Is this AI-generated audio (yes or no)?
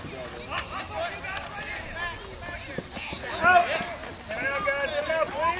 no